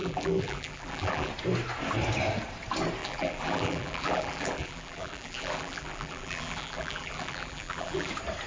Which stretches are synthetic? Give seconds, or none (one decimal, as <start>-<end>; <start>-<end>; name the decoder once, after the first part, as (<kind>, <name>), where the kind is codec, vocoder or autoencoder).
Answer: 0.0-1.3 (vocoder, BigVGAN v2); 3.0-8.1